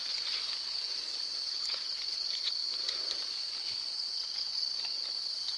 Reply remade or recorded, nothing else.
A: recorded